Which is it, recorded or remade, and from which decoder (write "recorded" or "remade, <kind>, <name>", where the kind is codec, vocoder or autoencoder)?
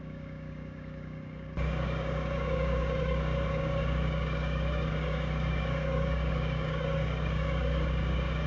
remade, codec, DAC